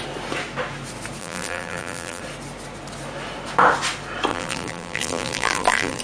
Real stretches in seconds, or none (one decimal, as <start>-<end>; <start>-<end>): 0.0-1.2; 2.2-4.3